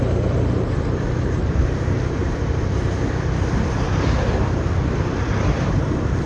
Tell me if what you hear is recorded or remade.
remade